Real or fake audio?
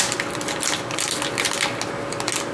real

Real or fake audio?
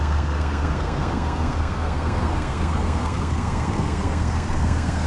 fake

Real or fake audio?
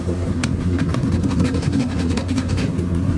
fake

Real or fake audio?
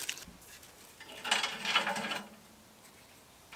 real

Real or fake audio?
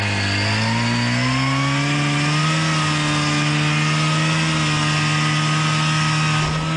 real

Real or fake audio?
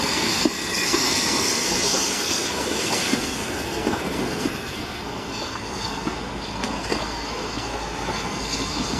fake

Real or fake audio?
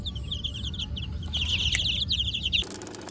real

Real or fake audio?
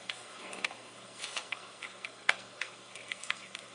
fake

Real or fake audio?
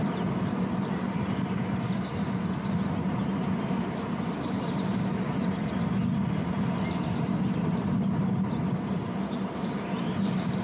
real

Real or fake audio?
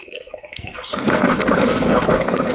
fake